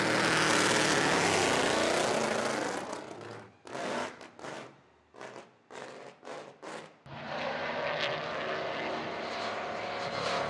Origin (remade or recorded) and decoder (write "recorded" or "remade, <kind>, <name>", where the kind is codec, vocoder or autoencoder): recorded